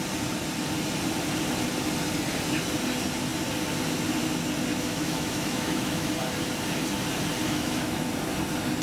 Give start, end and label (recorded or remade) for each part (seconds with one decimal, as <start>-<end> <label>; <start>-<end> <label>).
0.0-4.7 recorded; 4.7-6.1 remade; 6.1-7.4 recorded; 7.4-8.1 remade; 8.1-8.8 recorded